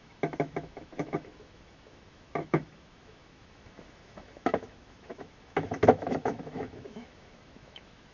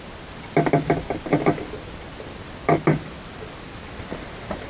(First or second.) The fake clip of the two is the first